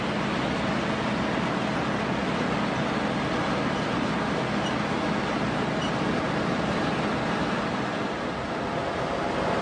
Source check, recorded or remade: recorded